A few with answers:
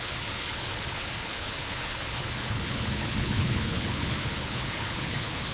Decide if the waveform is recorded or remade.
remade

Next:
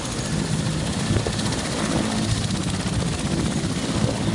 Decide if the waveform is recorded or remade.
recorded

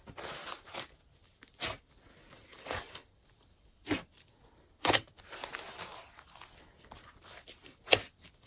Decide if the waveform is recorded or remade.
recorded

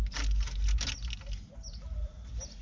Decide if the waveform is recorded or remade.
recorded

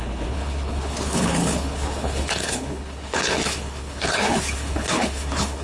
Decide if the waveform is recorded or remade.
remade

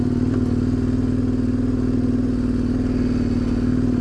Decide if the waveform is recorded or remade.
recorded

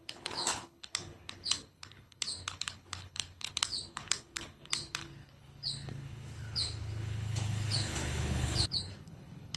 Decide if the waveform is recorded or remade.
remade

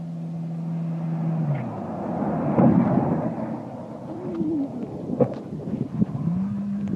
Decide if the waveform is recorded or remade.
recorded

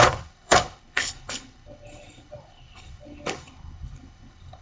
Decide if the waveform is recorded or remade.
remade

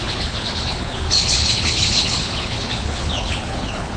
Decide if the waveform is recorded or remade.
remade